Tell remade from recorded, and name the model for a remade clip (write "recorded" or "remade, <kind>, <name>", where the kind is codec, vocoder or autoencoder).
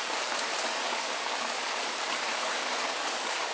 remade, codec, DAC